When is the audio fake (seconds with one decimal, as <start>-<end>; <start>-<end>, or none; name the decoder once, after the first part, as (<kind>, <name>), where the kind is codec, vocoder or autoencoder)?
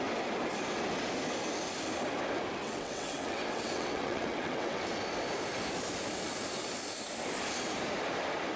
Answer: 2.6-4.8 (vocoder, WaveNeXt)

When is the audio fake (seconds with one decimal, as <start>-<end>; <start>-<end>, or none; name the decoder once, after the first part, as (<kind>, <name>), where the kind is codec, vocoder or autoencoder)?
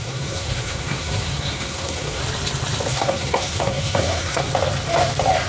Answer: 0.0-2.2 (codec, SNAC); 2.9-4.5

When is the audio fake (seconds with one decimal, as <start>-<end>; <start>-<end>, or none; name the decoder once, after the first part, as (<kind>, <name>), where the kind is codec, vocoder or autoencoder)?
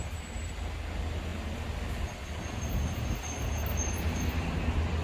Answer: none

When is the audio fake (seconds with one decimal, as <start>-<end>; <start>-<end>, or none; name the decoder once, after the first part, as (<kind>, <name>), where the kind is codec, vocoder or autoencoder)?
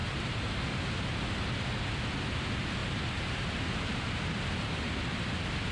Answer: 0.0-1.2 (vocoder, BigVGAN v2); 2.8-4.9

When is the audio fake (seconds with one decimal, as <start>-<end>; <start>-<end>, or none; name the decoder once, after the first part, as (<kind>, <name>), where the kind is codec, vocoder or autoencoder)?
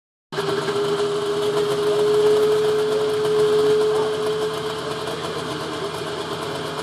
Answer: none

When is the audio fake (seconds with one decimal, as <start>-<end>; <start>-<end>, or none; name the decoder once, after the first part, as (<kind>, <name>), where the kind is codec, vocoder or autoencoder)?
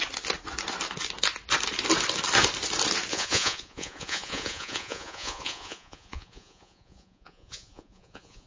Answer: 3.1-8.5 (vocoder, Vocos)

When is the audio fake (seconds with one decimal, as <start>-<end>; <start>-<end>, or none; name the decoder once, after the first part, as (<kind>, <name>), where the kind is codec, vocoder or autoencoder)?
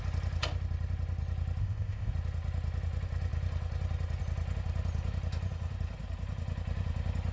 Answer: 1.6-2.1 (codec, ZipCodec)